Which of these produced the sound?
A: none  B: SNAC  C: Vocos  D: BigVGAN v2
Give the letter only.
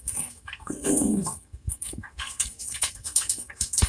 B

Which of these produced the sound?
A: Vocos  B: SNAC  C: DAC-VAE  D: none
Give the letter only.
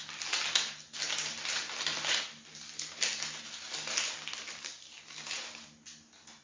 D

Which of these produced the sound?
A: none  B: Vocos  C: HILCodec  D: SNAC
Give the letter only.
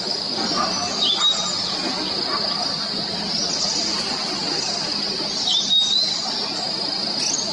A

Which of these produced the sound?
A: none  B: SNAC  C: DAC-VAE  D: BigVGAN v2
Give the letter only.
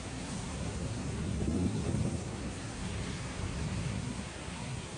B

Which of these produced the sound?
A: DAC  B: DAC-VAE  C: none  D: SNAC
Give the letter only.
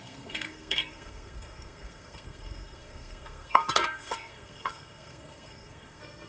D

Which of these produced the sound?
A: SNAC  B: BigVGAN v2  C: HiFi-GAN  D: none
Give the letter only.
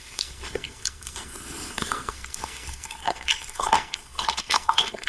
A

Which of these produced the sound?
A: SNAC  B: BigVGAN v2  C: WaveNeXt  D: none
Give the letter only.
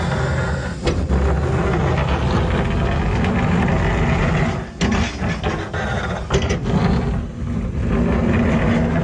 D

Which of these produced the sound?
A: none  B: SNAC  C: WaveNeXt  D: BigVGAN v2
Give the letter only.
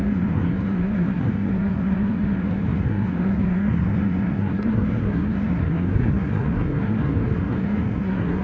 B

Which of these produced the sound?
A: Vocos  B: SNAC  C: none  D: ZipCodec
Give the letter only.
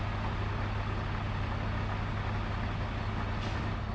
C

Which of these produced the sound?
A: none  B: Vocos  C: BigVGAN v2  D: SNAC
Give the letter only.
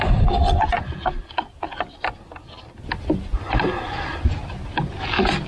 A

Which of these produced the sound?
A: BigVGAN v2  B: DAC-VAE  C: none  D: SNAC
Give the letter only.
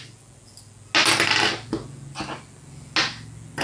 C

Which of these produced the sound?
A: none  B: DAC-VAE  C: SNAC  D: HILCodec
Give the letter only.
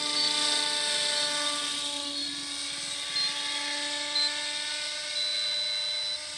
A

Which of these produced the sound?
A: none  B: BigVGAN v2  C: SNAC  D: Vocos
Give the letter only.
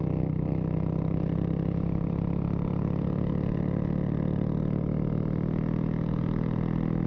A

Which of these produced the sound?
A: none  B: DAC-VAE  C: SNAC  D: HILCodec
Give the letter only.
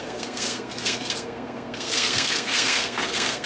C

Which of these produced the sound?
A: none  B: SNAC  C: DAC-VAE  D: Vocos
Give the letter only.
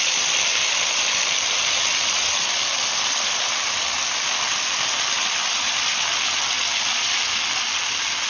A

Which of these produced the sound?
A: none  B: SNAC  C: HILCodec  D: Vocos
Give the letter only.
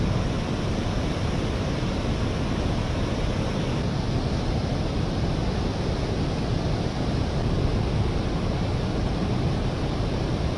A